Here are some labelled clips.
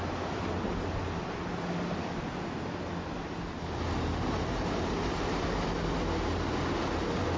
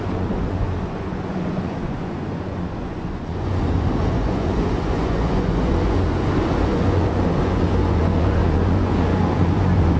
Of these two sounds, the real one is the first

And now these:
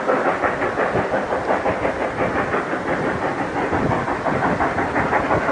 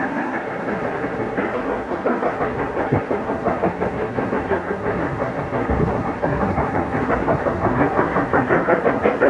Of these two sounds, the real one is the first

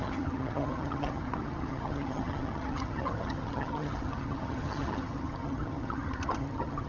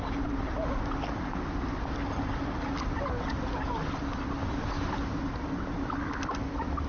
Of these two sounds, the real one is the second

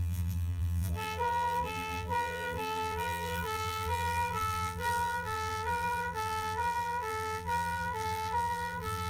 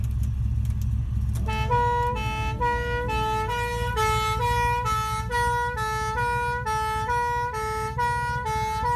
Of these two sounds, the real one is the second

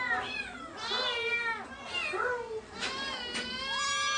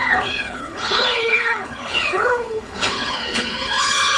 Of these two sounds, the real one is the first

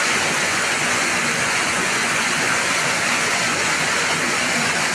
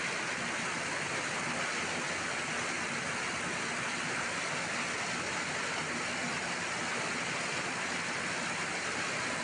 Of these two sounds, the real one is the second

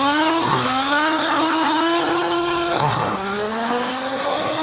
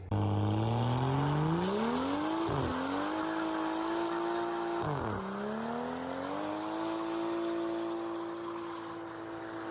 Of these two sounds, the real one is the second